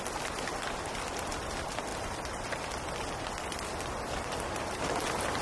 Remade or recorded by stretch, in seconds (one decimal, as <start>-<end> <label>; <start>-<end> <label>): 0.0-5.4 recorded

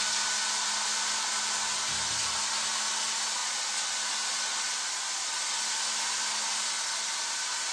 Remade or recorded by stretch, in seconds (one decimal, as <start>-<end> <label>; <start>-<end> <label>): 0.0-7.7 recorded

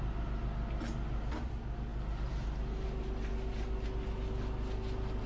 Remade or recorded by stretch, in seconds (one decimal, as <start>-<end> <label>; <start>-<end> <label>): 0.0-5.3 recorded

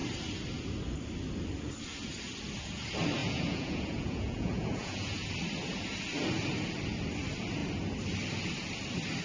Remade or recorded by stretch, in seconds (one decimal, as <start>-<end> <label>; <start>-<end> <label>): 0.0-3.2 recorded; 3.2-5.3 remade; 5.3-9.2 recorded

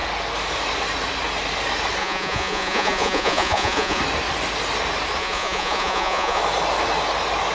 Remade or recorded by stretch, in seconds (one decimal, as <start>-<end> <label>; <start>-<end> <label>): 0.0-2.0 recorded; 2.0-4.0 remade; 4.0-5.2 recorded; 5.2-6.4 remade; 6.4-7.5 recorded

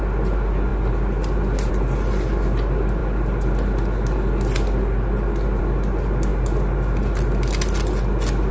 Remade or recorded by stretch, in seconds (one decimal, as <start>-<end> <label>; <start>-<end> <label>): 0.0-8.5 recorded

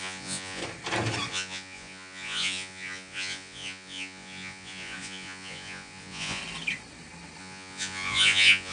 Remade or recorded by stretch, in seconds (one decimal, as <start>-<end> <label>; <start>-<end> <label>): 0.0-0.6 remade; 0.6-1.3 recorded; 1.3-6.4 remade; 6.4-7.4 recorded; 7.4-8.7 remade

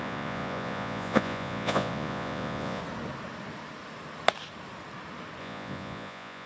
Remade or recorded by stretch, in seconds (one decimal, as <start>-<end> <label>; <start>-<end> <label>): 0.0-2.8 remade; 2.8-5.4 recorded; 5.4-6.5 remade